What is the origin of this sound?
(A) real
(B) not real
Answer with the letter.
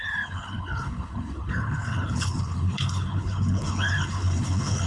B